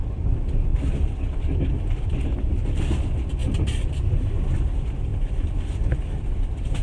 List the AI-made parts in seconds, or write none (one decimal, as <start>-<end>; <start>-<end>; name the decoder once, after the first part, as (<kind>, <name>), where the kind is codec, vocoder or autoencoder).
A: 0.7-1.8 (vocoder, BigVGAN v2); 5.1-6.8